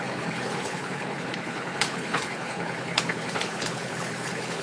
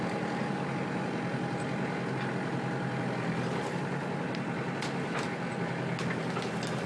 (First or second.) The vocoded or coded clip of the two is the first